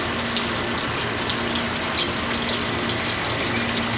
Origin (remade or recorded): recorded